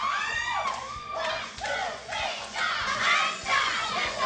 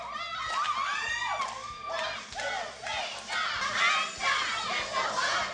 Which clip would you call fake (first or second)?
first